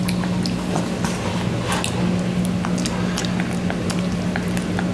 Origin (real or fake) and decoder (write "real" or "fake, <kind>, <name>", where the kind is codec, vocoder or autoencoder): real